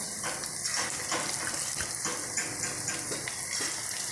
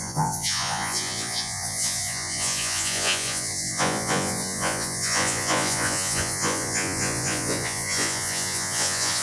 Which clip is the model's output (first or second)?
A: second